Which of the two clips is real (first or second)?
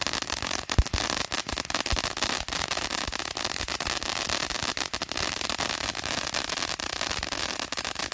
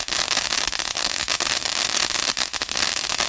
first